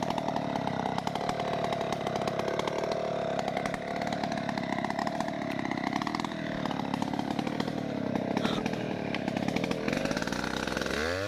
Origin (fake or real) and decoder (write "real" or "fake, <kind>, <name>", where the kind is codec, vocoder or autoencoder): real